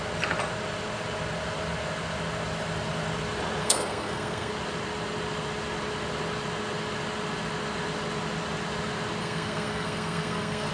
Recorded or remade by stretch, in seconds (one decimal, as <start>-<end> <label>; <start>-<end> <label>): 0.0-3.6 recorded; 3.6-4.5 remade; 4.5-9.2 recorded; 9.2-10.7 remade